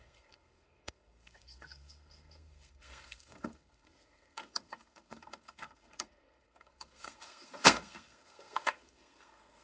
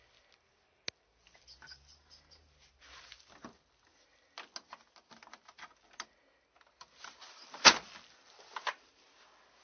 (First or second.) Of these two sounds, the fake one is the first